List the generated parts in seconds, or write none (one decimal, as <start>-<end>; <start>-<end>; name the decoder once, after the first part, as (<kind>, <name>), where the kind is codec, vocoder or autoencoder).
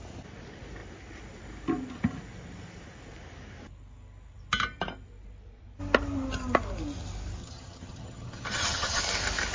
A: 7.4-9.0 (vocoder, HiFi-GAN)